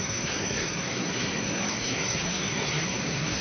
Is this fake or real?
fake